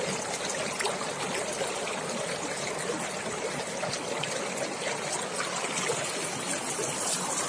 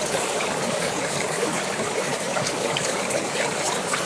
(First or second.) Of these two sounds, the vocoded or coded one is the second